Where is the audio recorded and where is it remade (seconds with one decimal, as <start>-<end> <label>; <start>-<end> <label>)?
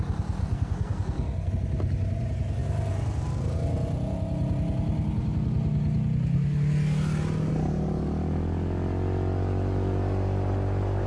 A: 0.0-0.4 recorded; 0.4-1.5 remade; 1.5-11.1 recorded